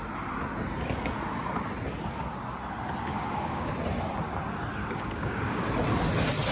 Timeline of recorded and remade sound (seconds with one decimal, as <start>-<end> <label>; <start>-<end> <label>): 0.0-3.1 recorded; 3.1-3.7 remade; 3.7-4.8 recorded; 4.8-5.7 remade; 5.7-6.5 recorded